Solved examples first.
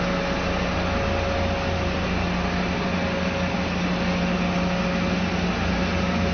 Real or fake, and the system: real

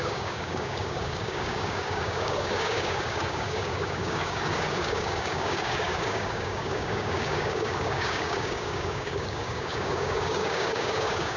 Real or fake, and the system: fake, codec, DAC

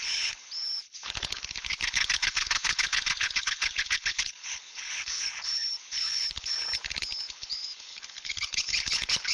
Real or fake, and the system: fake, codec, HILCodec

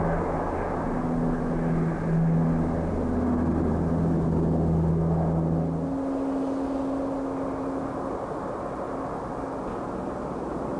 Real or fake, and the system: real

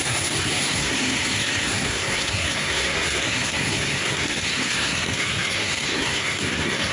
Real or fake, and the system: fake, codec, SNAC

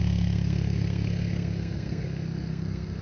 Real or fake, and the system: fake, codec, SNAC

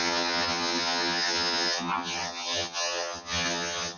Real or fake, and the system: fake, vocoder, HiFi-GAN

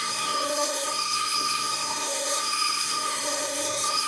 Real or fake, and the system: fake, codec, SNAC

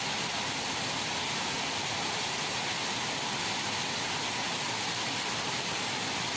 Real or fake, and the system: real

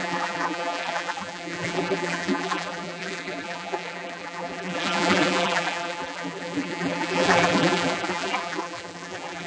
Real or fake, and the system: fake, vocoder, BigVGAN v2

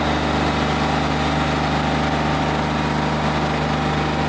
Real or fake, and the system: real